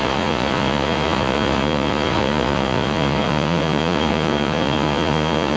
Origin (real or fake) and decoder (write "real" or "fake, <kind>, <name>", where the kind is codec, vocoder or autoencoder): fake, vocoder, Vocos